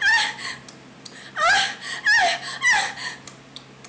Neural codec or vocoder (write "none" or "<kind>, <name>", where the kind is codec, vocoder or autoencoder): none